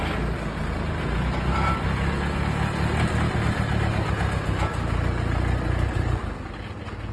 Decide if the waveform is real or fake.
real